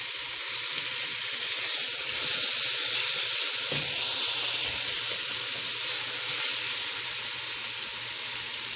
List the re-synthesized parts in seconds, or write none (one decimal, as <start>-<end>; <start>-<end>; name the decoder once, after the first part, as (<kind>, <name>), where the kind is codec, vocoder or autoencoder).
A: none